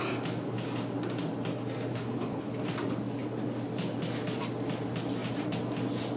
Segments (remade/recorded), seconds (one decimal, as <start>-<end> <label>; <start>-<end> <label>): 0.0-1.9 recorded; 1.9-2.5 remade; 2.5-6.2 recorded

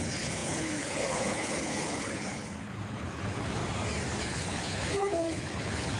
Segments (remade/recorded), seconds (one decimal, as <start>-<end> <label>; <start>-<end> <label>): 0.0-3.6 remade; 3.6-4.2 recorded; 4.2-6.0 remade

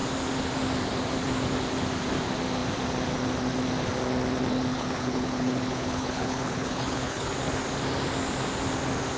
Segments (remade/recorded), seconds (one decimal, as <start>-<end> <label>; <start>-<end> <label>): 0.0-4.7 recorded; 4.7-7.3 remade; 7.3-9.2 recorded

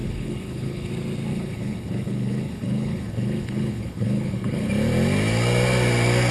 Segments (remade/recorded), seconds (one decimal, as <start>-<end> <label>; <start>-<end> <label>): 0.0-0.9 remade; 0.9-1.3 recorded; 1.3-4.7 remade; 4.7-6.3 recorded

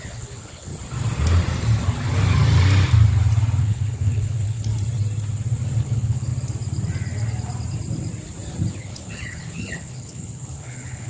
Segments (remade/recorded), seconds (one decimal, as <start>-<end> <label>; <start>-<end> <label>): 0.0-0.7 remade; 0.7-3.6 recorded; 3.6-4.7 remade; 4.7-5.8 recorded; 5.8-6.3 remade; 6.3-8.7 recorded; 8.7-11.1 remade

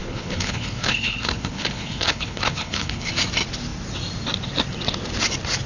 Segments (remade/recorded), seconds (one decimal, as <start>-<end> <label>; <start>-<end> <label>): 0.0-3.1 remade; 3.1-5.7 recorded

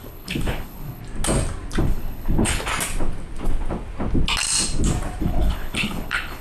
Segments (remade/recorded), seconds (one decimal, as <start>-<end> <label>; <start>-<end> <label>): 0.0-1.0 remade; 1.0-1.8 recorded; 1.8-2.7 remade; 2.7-5.2 recorded; 5.2-6.4 remade